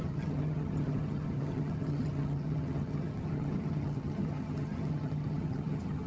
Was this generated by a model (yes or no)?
yes